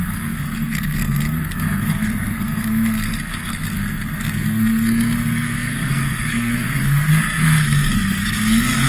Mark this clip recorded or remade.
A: remade